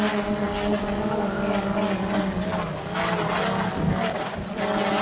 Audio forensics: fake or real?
real